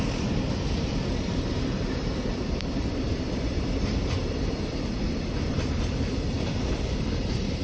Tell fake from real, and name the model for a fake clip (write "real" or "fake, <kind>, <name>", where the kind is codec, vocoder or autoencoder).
fake, vocoder, BigVGAN v2